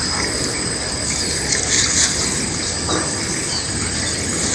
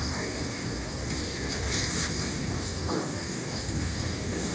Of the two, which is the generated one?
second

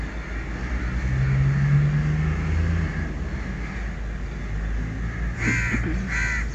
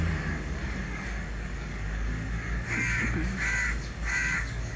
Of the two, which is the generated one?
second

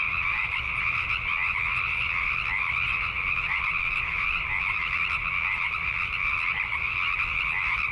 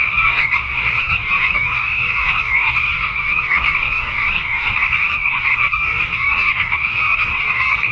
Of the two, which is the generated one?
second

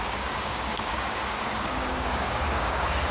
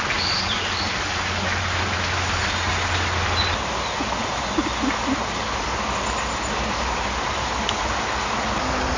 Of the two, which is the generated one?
first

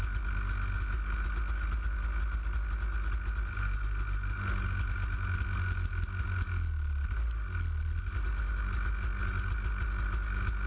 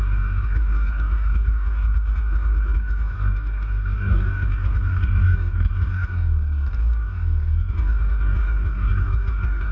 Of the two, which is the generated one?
second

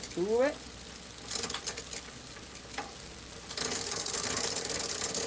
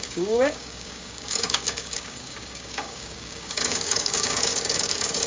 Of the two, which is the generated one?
second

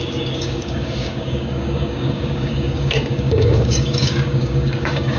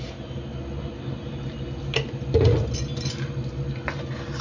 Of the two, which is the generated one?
first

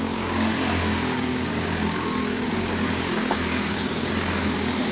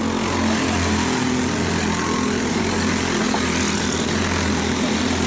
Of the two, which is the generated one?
first